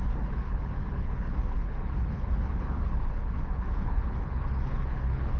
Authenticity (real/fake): fake